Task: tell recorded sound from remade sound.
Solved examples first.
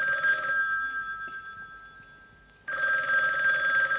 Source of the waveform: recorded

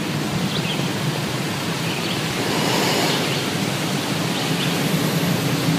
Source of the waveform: recorded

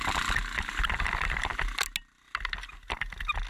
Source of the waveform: recorded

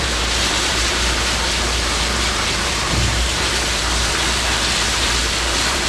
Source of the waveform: remade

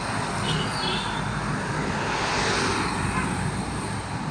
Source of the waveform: recorded